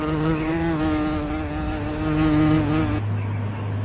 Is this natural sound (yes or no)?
yes